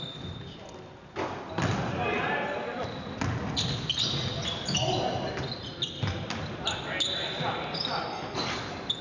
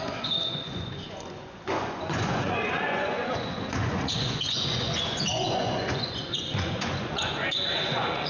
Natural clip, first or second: first